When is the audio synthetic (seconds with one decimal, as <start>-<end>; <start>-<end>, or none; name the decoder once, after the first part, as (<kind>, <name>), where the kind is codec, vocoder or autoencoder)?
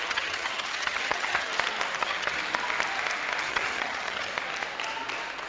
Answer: 0.0-1.5 (vocoder, HiFi-GAN); 2.0-2.4; 3.4-4.3